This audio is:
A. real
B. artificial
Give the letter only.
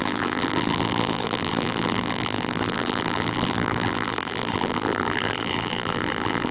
B